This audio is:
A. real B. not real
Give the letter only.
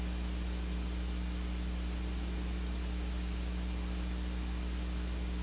A